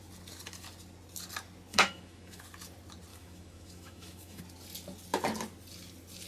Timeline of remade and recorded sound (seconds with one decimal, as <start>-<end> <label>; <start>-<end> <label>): 0.0-1.7 recorded; 1.7-2.4 remade; 2.4-3.1 recorded; 3.1-4.4 remade; 4.4-6.3 recorded